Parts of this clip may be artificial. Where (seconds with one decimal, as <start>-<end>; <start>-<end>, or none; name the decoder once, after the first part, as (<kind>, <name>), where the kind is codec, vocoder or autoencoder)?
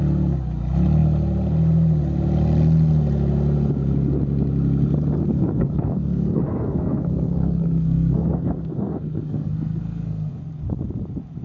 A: 5.2-10.3 (codec, SNAC)